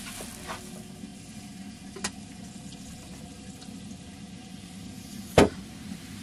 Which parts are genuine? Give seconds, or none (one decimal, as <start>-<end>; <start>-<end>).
0.0-6.2